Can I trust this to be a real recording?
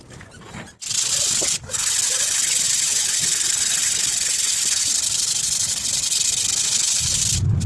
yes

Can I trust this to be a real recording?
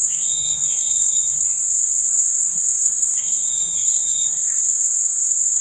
no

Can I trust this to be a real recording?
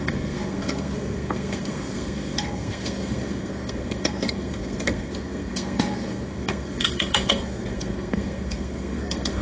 no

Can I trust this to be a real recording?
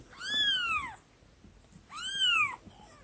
yes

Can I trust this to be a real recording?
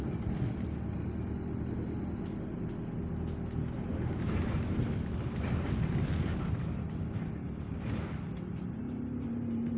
yes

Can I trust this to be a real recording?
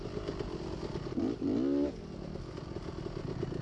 yes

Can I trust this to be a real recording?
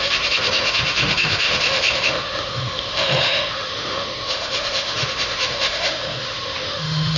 no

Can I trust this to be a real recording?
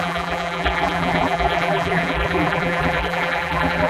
no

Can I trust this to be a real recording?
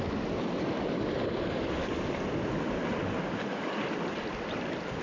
yes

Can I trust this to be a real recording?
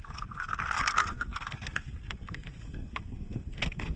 no